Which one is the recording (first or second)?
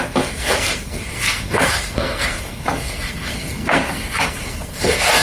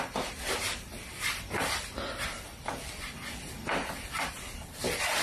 second